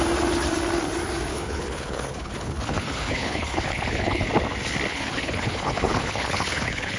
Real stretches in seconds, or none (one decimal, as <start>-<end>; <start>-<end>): 0.0-1.3; 4.3-4.9